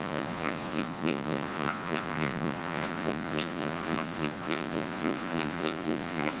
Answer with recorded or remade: remade